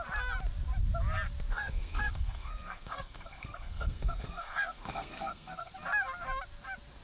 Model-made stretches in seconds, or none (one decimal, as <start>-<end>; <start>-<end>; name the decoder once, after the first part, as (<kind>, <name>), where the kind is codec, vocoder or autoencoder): 1.5-5.7 (codec, SNAC)